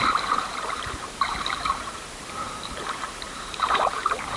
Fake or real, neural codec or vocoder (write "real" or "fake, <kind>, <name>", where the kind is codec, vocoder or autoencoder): fake, vocoder, BigVGAN v2